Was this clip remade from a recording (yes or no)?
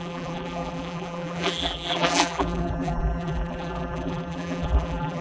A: yes